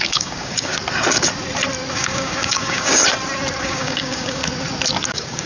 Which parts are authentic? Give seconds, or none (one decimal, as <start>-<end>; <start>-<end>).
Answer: 0.7-1.9; 3.0-3.6; 4.4-5.1